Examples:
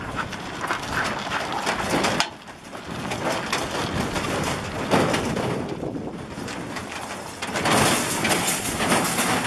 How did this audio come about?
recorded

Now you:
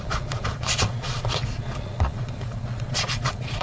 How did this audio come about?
remade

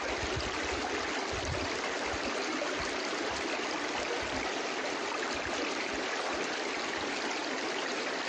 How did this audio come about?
recorded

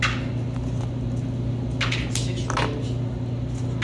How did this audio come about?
recorded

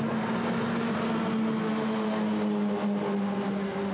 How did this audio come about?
recorded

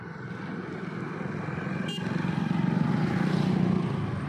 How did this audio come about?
recorded